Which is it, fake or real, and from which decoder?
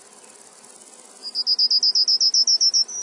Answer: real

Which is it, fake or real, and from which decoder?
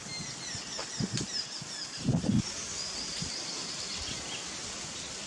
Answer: real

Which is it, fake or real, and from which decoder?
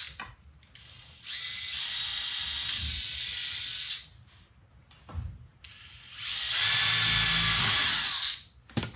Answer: real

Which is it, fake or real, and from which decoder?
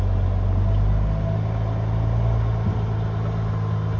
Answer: real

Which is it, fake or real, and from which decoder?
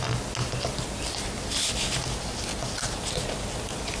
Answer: real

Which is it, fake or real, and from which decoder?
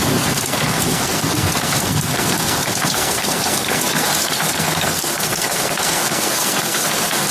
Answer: fake, codec, SNAC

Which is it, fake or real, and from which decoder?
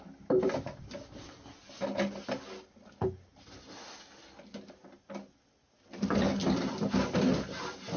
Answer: real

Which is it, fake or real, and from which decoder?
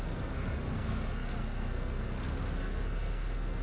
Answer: fake, codec, SNAC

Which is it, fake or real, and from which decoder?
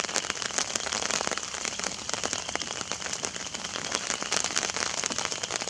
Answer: real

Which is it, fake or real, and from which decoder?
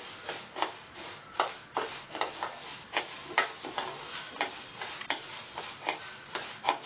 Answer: real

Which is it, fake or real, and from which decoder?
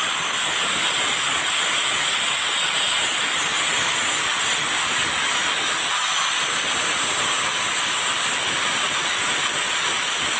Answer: real